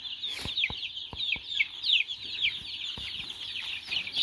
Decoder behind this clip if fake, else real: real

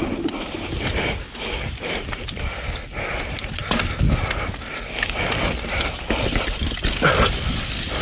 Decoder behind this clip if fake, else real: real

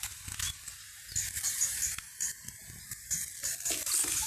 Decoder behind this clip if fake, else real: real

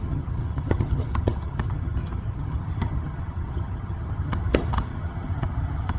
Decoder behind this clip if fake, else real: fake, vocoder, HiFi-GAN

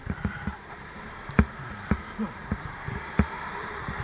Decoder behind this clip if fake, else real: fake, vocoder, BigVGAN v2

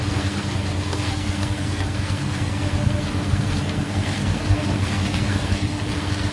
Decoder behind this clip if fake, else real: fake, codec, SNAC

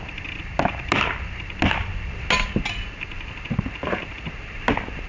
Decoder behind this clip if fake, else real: real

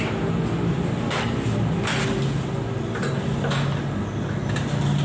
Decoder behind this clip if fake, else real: fake, vocoder, BigVGAN v2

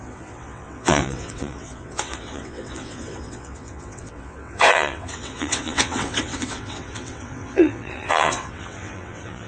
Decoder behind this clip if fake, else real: fake, vocoder, WaveNeXt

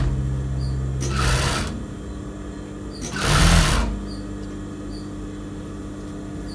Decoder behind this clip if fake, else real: real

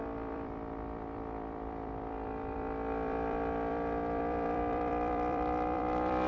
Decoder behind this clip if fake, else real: fake, vocoder, BigVGAN v2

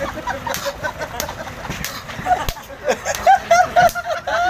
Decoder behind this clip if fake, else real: real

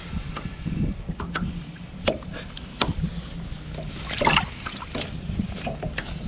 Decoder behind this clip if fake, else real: real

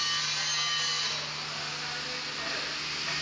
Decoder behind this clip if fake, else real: real